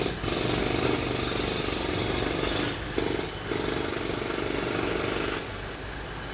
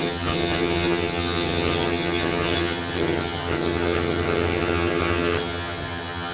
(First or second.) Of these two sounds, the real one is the first